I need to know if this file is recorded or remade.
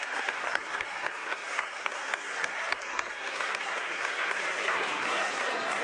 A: remade